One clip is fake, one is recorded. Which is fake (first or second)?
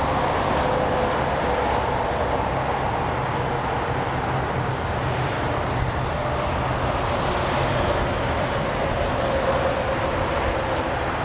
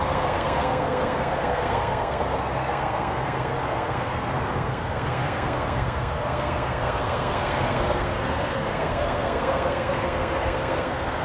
second